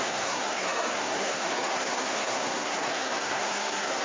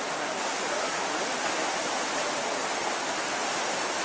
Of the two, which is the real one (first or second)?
second